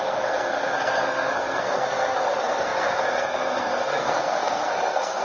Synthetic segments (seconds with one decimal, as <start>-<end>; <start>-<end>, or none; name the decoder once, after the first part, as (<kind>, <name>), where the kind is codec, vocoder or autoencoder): 0.0-5.2 (codec, SNAC)